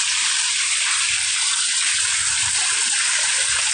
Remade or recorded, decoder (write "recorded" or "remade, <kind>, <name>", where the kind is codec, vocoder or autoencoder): recorded